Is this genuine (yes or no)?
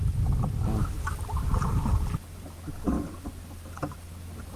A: yes